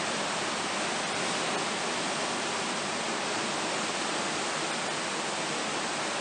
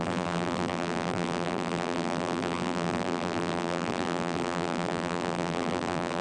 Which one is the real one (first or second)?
first